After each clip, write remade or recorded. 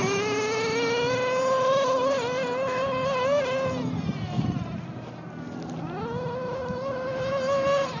recorded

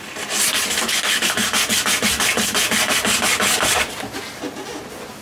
recorded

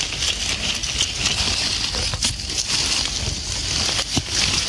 recorded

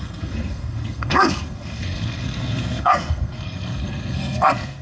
remade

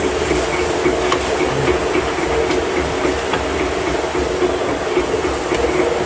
recorded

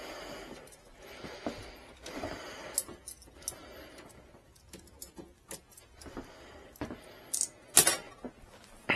recorded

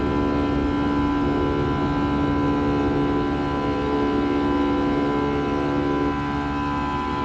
recorded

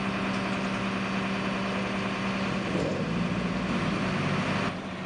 recorded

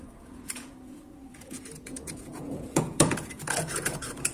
remade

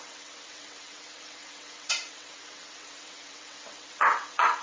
remade